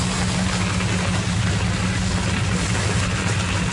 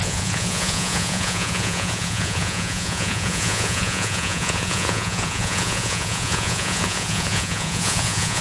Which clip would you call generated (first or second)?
second